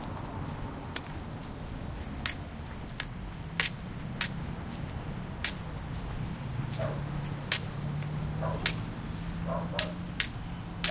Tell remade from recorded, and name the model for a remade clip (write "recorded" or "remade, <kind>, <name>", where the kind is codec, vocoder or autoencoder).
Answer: recorded